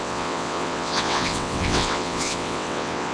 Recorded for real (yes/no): no